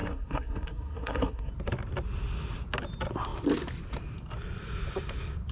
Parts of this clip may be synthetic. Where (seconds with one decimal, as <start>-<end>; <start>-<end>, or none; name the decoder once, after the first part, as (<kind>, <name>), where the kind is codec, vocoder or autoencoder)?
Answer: 0.0-1.5 (codec, SNAC)